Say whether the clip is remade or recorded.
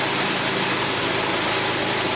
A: recorded